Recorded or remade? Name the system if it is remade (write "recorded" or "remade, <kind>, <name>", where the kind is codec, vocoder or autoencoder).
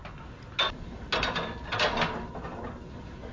recorded